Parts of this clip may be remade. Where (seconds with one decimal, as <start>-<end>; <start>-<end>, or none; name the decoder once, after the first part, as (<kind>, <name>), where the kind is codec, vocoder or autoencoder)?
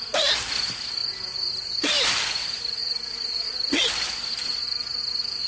none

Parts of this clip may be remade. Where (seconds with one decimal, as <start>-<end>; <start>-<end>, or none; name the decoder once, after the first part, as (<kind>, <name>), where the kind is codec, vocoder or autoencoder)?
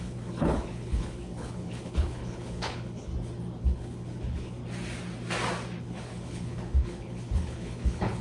0.0-3.1 (codec, HILCodec); 3.6-4.6; 5.8-8.2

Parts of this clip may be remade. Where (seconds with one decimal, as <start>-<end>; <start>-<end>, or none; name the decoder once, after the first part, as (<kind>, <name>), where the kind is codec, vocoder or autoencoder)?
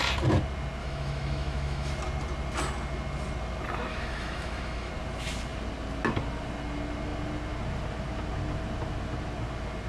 0.8-1.9 (autoencoder, DAC-VAE); 3.9-4.9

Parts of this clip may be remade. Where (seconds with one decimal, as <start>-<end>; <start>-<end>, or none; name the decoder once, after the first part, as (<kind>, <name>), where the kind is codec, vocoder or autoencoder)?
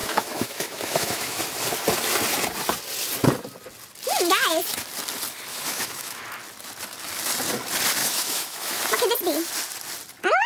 0.0-1.4 (autoencoder, DAC-VAE); 5.5-6.2; 8.0-8.8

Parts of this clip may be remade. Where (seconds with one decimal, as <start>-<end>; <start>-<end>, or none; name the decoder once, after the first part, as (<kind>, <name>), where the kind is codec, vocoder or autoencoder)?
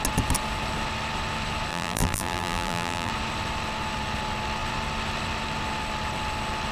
1.7-3.1 (vocoder, BigVGAN v2)